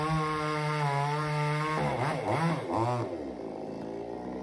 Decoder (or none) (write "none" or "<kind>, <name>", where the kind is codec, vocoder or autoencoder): none